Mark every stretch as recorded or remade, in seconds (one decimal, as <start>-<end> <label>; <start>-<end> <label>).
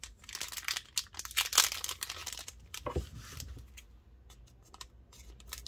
0.0-5.7 recorded